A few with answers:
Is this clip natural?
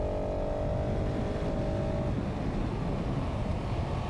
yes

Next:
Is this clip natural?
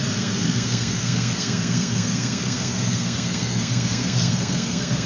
no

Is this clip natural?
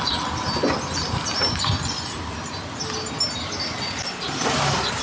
yes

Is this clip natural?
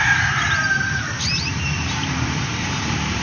no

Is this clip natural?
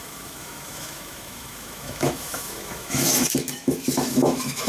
no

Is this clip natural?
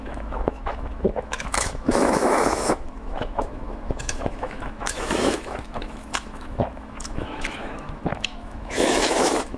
no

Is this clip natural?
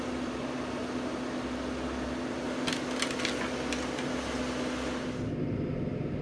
yes